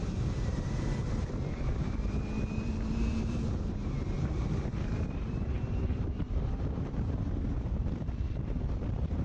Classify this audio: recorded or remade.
remade